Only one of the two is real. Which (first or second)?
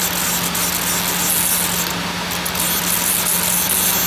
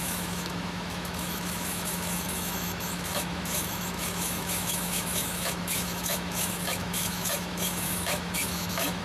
first